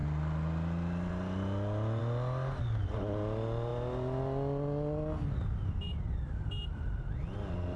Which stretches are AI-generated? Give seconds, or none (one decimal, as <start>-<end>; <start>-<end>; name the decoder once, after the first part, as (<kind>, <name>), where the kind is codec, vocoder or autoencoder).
none